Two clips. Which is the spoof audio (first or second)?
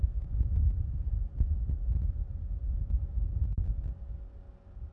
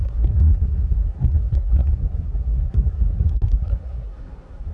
second